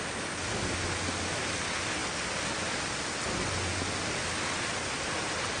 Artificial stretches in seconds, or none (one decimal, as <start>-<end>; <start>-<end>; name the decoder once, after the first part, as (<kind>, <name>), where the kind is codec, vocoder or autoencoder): none